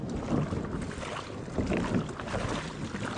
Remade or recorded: recorded